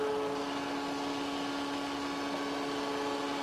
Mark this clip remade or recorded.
recorded